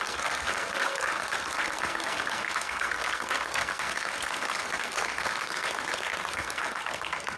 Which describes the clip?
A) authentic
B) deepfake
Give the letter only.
B